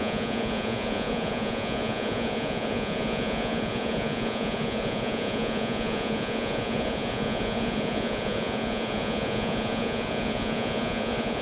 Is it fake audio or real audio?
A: fake